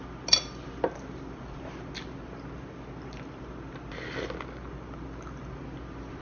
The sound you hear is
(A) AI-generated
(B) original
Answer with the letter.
B